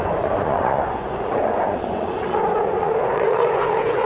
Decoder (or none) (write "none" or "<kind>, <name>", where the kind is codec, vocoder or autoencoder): vocoder, Vocos